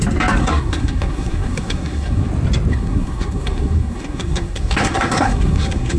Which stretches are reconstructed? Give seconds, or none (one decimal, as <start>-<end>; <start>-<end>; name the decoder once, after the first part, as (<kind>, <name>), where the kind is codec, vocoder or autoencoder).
0.4-2.3 (codec, SNAC); 2.7-6.0